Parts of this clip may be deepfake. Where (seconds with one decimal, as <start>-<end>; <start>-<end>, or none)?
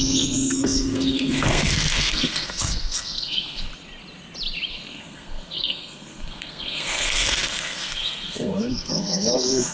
0.0-3.7; 4.7-9.7